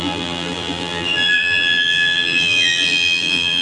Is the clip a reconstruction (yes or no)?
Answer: yes